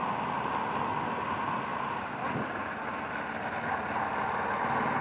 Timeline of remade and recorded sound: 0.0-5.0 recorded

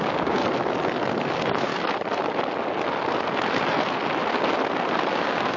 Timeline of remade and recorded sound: 0.0-0.4 remade; 0.4-1.2 recorded; 1.2-1.7 remade; 1.7-5.1 recorded; 5.1-5.6 remade

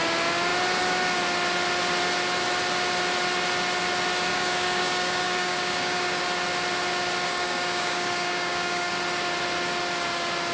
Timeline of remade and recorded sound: 0.0-4.3 recorded; 4.3-6.2 remade; 6.2-7.3 recorded; 7.3-8.9 remade; 8.9-10.5 recorded

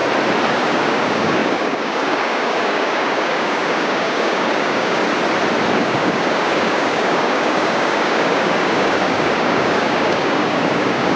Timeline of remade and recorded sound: 0.0-0.5 recorded; 0.5-5.0 remade; 5.0-5.7 recorded; 5.7-11.2 remade

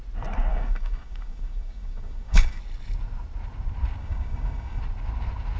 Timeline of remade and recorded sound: 0.0-0.5 recorded; 0.5-2.6 remade; 2.6-4.0 recorded; 4.0-4.8 remade; 4.8-5.6 recorded

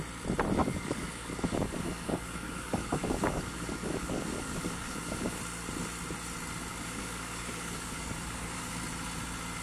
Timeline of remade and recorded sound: 0.0-0.6 recorded; 0.6-5.4 remade; 5.4-6.7 recorded; 6.7-8.7 remade; 8.7-9.6 recorded